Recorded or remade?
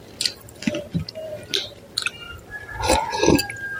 recorded